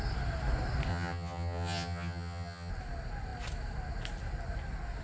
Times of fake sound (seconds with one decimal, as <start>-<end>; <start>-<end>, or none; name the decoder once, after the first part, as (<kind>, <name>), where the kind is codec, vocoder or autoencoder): 0.9-2.7 (vocoder, HiFi-GAN)